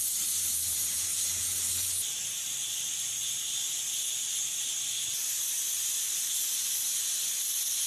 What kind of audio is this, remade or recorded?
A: remade